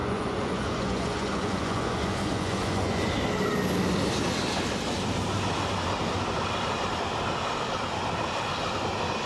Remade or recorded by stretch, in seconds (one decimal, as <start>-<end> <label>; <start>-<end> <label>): 0.0-3.1 remade; 3.1-9.3 recorded